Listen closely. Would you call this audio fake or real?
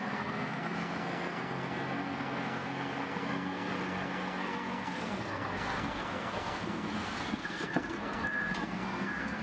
fake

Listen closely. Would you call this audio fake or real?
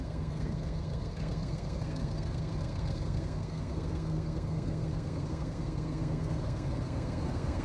fake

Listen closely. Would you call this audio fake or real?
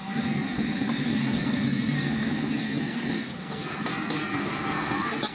fake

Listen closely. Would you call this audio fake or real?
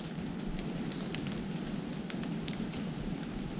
real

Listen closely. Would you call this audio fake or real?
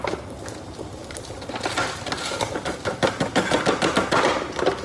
real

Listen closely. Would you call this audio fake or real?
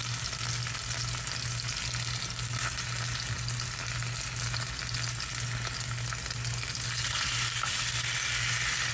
real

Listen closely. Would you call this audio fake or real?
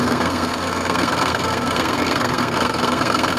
fake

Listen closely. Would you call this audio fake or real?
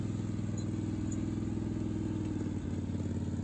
real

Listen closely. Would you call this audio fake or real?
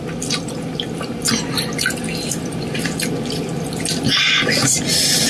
real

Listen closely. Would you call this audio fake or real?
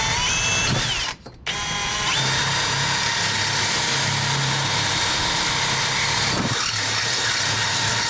real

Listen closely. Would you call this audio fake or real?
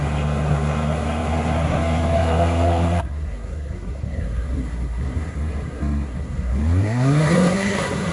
fake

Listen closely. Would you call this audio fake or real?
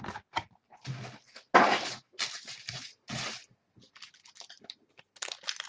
real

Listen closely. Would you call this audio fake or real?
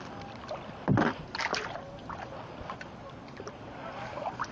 real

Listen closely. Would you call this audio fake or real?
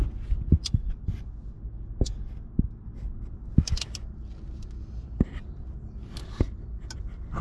real